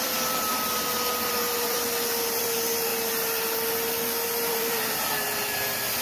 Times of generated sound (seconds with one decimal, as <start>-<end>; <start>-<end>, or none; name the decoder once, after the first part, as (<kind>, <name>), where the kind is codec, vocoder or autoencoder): 0.0-0.5 (vocoder, BigVGAN v2); 1.3-2.9; 4.5-6.0